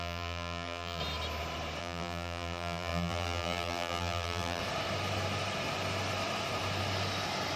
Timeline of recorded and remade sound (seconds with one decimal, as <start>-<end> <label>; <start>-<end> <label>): 0.0-1.0 remade; 1.0-1.8 recorded; 1.8-4.6 remade; 4.6-7.6 recorded